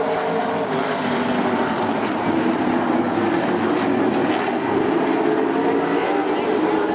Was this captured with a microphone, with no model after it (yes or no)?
yes